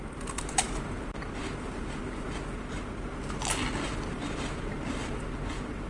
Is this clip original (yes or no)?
yes